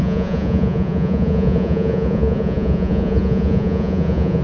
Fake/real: fake